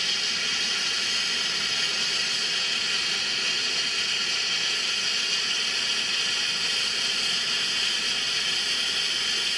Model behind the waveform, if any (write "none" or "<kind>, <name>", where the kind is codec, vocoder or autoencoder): none